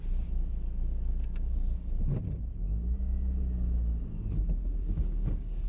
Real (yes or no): yes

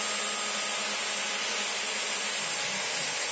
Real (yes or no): yes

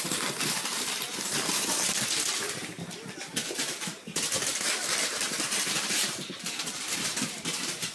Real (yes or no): no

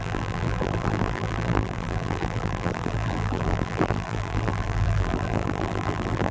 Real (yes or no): no